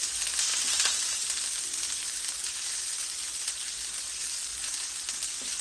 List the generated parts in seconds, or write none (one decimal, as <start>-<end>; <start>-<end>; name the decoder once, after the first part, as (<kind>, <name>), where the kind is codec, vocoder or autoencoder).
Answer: none